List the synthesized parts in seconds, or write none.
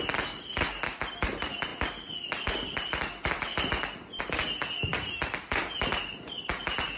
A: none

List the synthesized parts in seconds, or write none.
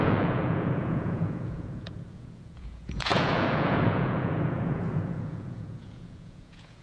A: 0.0-6.8 (vocoder, Vocos)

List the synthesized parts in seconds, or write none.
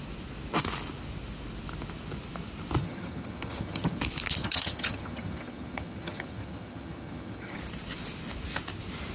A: 2.8-4.0 (vocoder, HiFi-GAN); 4.4-7.6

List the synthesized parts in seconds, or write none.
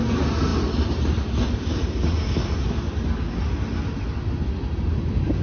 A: none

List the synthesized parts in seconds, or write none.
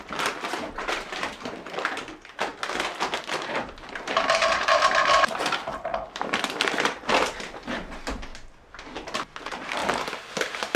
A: 0.0-2.5 (vocoder, BigVGAN v2); 3.3-8.3; 9.4-9.8; 10.4-10.8